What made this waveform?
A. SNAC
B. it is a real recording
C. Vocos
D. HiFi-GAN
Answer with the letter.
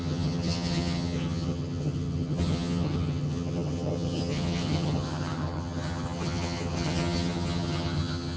D